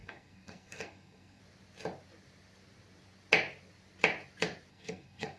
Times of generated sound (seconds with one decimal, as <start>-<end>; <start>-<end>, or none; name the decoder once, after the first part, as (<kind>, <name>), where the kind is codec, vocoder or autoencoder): 0.0-1.4 (codec, SNAC); 4.7-5.4